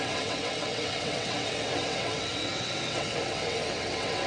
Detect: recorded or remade remade